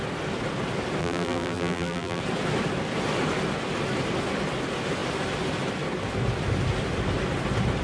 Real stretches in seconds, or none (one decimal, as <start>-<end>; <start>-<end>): 0.0-1.0; 2.2-7.8